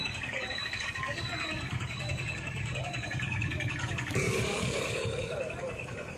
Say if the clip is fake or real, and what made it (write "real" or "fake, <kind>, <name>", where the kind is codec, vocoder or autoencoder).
fake, codec, DAC